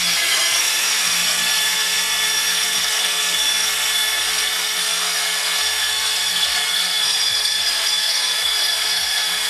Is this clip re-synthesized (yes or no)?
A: yes